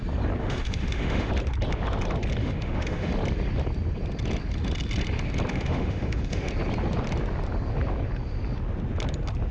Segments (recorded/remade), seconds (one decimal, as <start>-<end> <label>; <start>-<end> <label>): 0.0-0.4 recorded; 0.4-1.3 remade; 1.3-2.4 recorded; 2.4-3.1 remade; 3.1-5.5 recorded; 5.5-6.5 remade; 6.5-9.5 recorded

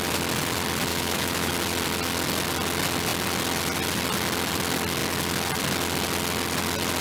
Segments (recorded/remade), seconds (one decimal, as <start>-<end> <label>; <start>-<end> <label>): 0.0-0.9 recorded; 0.9-1.5 remade; 1.5-7.0 recorded